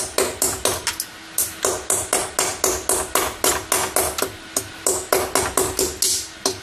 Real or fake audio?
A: real